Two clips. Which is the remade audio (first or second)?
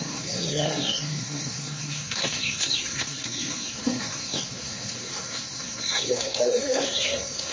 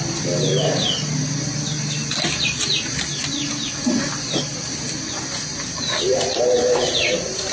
first